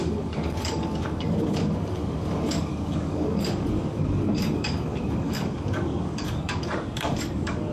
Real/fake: fake